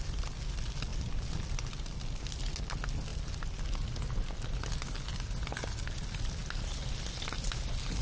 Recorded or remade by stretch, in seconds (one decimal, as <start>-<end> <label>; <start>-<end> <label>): 0.0-0.9 recorded; 0.9-1.5 remade; 1.5-3.1 recorded; 3.1-3.6 remade; 3.6-8.0 recorded